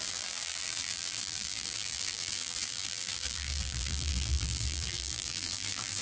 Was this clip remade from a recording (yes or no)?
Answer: yes